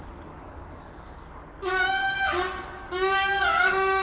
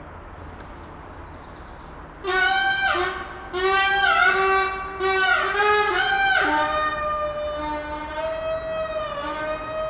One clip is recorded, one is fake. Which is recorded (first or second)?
second